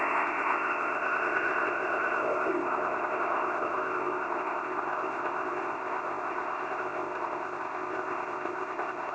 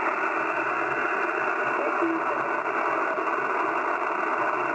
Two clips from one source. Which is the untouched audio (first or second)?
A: second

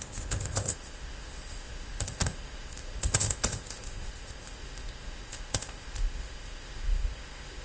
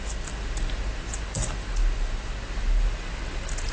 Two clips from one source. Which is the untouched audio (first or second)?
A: second